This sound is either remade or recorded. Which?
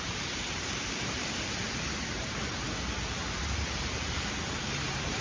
remade